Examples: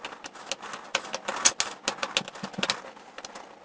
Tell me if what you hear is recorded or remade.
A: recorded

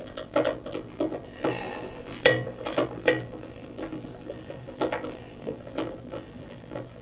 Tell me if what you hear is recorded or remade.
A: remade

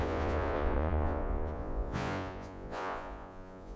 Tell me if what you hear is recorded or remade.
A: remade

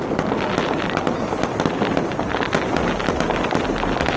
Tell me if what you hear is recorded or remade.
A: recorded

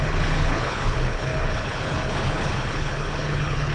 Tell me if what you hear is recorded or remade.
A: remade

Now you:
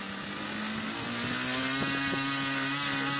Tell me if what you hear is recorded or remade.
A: recorded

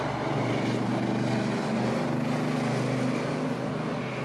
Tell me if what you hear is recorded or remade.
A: recorded